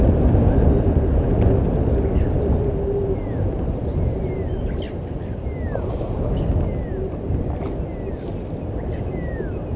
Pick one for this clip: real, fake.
real